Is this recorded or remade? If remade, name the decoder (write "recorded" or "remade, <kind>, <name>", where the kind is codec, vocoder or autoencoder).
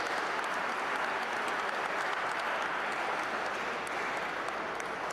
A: recorded